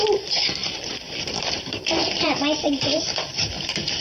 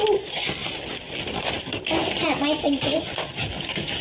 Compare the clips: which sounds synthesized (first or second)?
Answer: first